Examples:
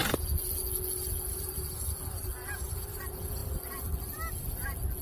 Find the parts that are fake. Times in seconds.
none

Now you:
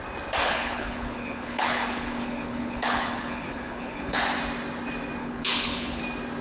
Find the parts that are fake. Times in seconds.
0.4-4.2; 5.2-6.0

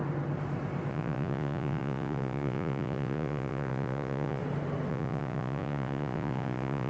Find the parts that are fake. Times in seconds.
0.9-4.4; 4.9-6.9

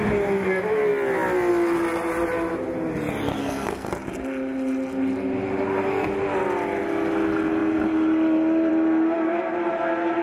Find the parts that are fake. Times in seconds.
3.3-3.9

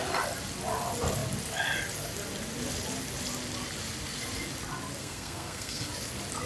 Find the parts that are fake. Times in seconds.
5.0-5.9